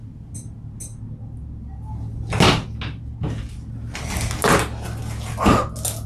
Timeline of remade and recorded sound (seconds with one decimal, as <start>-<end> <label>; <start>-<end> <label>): 0.0-6.1 recorded